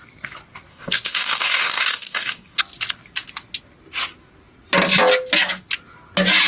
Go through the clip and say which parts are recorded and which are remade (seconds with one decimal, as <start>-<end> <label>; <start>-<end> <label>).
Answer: 0.0-0.7 recorded; 0.7-2.6 remade; 2.6-6.5 recorded